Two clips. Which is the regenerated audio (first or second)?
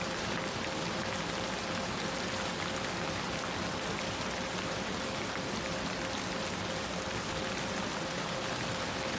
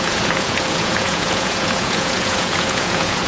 second